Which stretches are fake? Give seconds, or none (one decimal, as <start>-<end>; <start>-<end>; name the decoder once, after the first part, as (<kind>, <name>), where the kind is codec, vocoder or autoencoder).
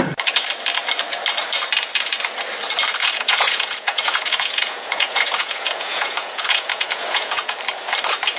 3.0-7.6 (vocoder, Vocos)